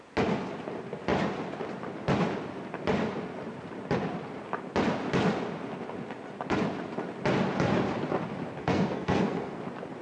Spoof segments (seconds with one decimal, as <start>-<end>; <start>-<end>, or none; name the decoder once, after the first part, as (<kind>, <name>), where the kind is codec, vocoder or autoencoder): 8.6-9.6 (codec, SNAC)